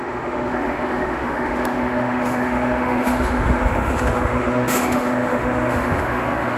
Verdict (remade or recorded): remade